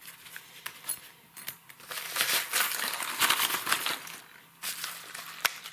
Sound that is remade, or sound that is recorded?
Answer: recorded